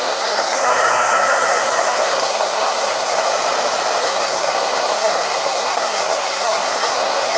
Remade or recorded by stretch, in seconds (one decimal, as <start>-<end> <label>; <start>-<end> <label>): 0.0-3.3 remade; 3.3-4.0 recorded; 4.0-7.4 remade

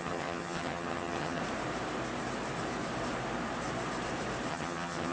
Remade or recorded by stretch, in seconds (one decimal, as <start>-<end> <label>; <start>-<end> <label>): 0.0-1.4 remade; 1.4-4.5 recorded; 4.5-5.1 remade

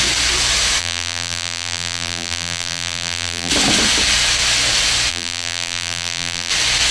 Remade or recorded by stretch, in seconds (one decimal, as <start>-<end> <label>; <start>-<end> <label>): 0.0-0.8 recorded; 0.8-3.5 remade; 3.5-5.1 recorded; 5.1-6.5 remade; 6.5-6.9 recorded